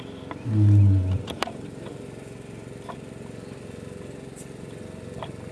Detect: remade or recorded recorded